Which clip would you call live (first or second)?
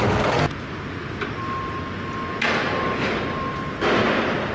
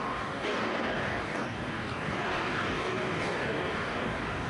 first